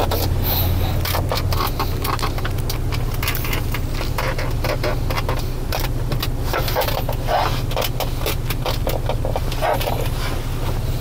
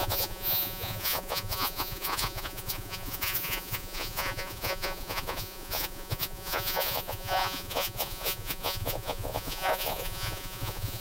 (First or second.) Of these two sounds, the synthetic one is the second